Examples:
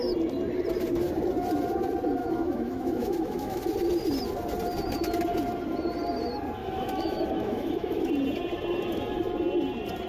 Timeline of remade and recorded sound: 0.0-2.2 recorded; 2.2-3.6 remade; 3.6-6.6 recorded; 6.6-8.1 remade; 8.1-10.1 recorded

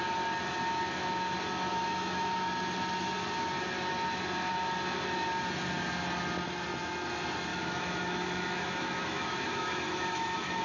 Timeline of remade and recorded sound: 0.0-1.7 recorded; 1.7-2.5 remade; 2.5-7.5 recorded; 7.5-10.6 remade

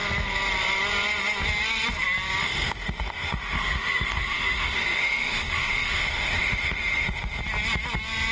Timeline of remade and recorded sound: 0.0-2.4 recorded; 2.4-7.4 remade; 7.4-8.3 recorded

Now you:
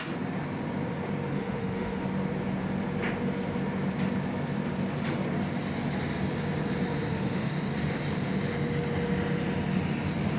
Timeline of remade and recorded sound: 0.0-1.3 recorded; 1.3-2.0 remade; 2.0-7.1 recorded; 7.1-7.7 remade; 7.7-10.4 recorded

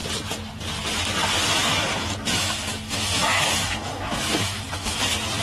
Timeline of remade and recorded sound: 0.0-1.8 recorded; 1.8-5.0 remade; 5.0-5.4 recorded

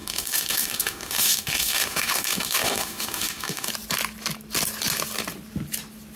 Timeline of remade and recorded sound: 0.0-3.7 remade; 3.7-6.2 recorded